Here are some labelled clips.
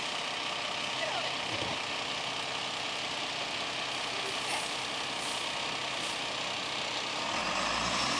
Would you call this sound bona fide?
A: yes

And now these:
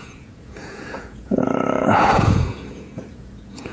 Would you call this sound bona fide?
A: no